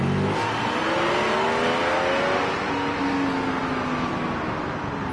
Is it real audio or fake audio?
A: real